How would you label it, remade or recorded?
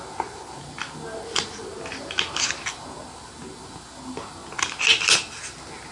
recorded